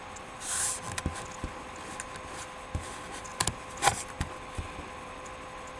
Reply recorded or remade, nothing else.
recorded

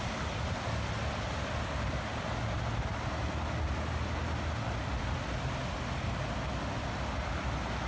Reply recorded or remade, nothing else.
recorded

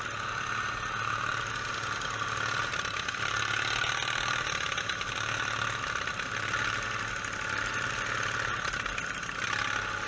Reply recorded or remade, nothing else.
recorded